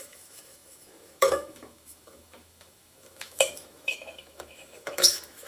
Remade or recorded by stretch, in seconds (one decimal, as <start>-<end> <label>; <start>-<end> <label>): 0.0-5.5 remade